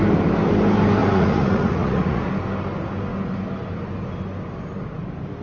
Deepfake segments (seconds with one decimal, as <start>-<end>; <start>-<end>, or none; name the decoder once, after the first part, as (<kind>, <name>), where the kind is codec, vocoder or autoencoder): 1.0-2.3 (vocoder, Vocos)